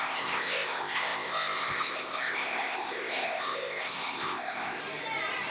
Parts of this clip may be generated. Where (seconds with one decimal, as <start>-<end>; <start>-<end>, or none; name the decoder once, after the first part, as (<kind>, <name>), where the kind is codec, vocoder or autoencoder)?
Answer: 0.0-4.8 (codec, ZipCodec)